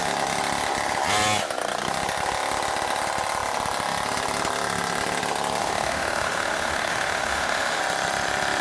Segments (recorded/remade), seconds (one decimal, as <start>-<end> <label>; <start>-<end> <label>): 0.0-5.6 recorded; 5.6-7.8 remade; 7.8-8.6 recorded